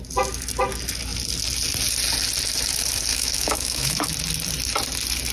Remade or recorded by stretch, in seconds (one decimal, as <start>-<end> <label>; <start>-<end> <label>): 0.0-3.1 recorded; 3.1-4.1 remade; 4.1-5.3 recorded